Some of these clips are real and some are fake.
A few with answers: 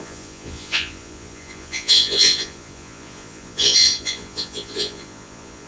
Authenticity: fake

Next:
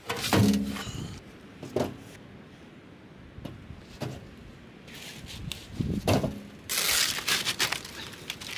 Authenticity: real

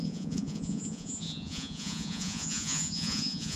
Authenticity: fake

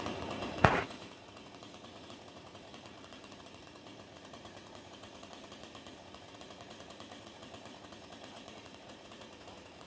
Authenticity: fake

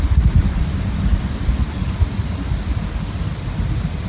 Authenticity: real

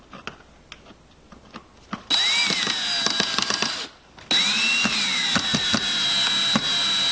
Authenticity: real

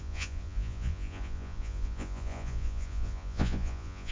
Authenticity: fake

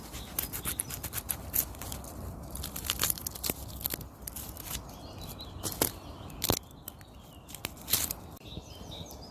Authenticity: real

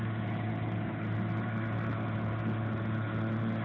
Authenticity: real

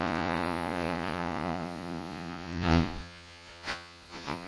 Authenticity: fake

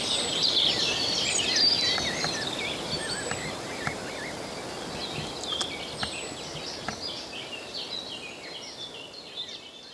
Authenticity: real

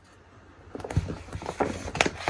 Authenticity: real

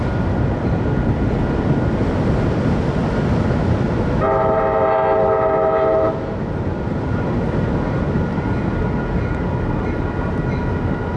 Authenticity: real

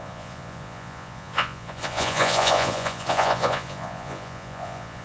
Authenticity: fake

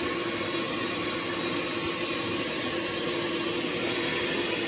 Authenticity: real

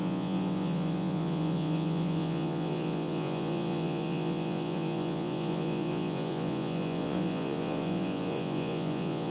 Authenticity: fake